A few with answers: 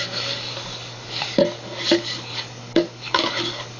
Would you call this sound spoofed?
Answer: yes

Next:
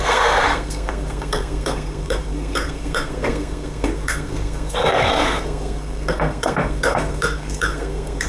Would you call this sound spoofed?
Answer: yes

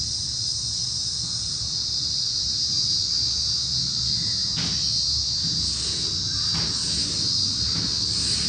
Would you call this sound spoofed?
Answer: no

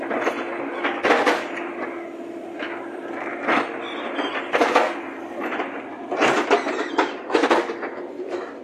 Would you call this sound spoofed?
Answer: no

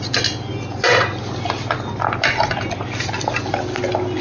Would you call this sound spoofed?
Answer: no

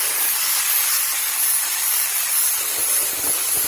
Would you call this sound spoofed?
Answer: no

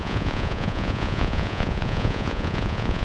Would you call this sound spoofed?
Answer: yes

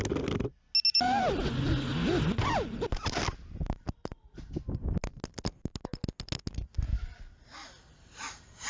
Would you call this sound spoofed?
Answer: no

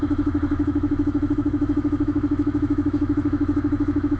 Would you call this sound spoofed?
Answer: yes